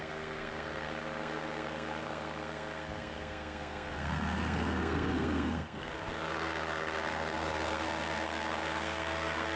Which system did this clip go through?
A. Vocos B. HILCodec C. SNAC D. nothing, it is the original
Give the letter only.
C